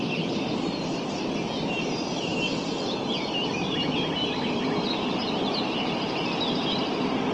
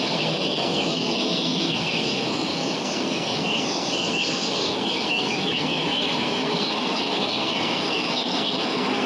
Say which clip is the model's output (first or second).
second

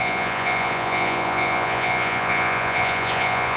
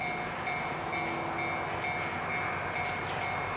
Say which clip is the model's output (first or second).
first